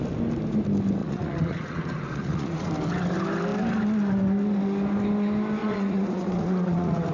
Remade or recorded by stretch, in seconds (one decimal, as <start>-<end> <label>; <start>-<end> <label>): 0.0-1.0 recorded; 1.0-2.7 remade; 2.7-5.6 recorded; 5.6-7.1 remade